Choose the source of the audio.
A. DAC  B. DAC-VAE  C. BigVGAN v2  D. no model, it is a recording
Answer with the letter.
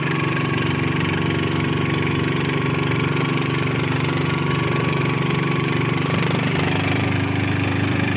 D